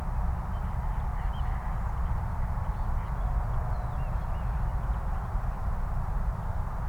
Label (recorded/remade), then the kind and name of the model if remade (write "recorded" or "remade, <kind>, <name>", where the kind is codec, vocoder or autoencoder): recorded